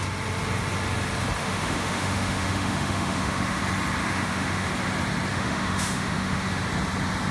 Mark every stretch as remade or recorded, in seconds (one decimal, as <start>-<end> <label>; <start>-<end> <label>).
0.0-1.4 recorded; 1.4-3.6 remade; 3.6-4.0 recorded; 4.0-4.7 remade; 4.7-5.3 recorded; 5.3-6.6 remade; 6.6-7.3 recorded